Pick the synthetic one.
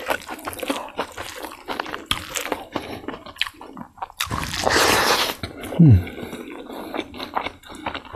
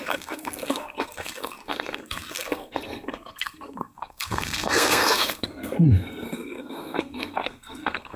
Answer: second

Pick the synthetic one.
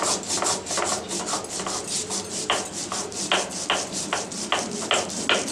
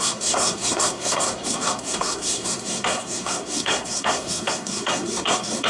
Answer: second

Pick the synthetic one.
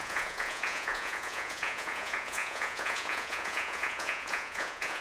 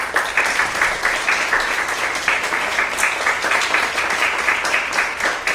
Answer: first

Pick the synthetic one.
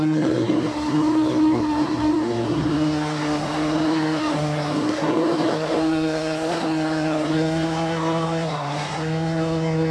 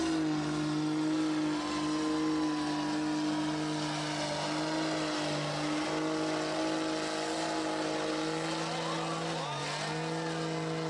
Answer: first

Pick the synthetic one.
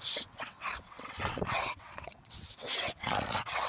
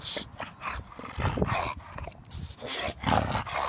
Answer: first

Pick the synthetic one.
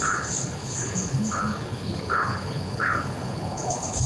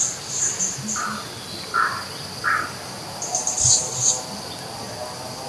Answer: first